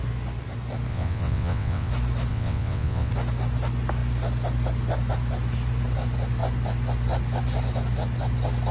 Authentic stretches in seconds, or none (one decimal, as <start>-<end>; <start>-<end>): 0.0-0.9; 1.9-2.3; 3.1-8.7